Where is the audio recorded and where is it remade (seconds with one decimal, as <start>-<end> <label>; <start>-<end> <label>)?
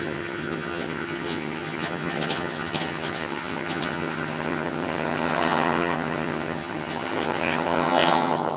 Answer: 0.0-8.6 remade